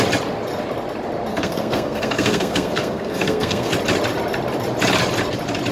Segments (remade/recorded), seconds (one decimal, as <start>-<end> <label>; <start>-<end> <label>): 0.0-1.3 recorded; 1.3-3.7 remade; 3.7-5.7 recorded